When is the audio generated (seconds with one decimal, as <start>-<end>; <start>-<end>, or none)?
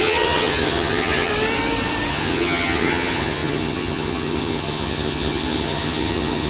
0.0-1.3; 2.1-6.5